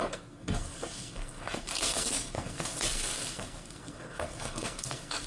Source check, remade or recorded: remade